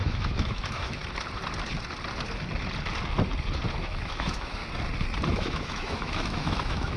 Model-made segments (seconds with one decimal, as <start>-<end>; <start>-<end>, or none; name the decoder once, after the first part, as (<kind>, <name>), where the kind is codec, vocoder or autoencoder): 0.0-1.0 (autoencoder, DAC-VAE); 3.8-4.6; 5.3-7.0

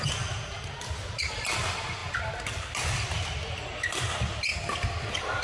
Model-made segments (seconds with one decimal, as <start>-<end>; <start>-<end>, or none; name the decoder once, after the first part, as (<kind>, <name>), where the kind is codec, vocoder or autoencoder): none

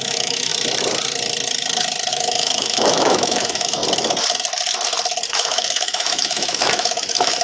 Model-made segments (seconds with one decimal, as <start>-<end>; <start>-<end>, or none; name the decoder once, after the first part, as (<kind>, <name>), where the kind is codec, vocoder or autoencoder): 0.0-0.5 (autoencoder, DAC-VAE); 2.1-3.8; 5.3-7.4